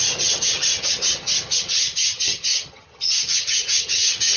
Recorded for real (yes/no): no